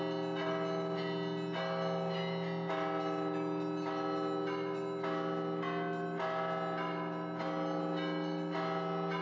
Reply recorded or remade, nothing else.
recorded